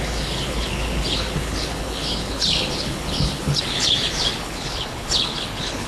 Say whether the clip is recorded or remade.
remade